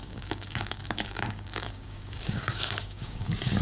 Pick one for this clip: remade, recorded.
remade